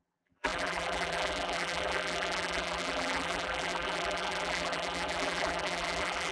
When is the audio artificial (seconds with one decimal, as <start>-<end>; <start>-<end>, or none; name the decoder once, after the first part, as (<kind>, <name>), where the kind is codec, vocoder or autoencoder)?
0.0-6.3 (vocoder, BigVGAN v2)